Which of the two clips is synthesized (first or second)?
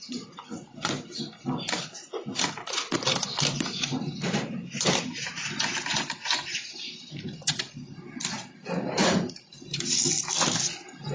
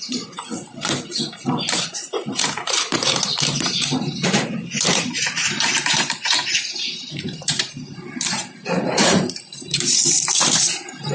second